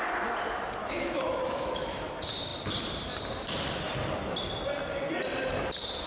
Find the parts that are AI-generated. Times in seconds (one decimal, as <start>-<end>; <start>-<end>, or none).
0.8-2.1